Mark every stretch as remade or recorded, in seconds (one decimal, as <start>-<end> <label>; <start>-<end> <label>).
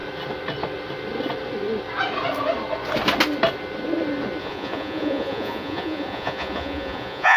0.0-4.4 recorded; 4.4-7.4 remade